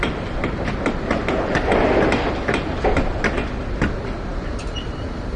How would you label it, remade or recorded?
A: recorded